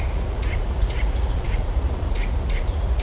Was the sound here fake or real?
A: fake